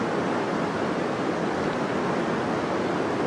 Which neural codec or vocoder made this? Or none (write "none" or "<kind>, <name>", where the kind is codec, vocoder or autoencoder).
none